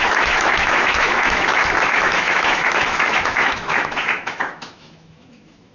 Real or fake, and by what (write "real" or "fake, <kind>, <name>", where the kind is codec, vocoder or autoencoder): fake, autoencoder, DAC-VAE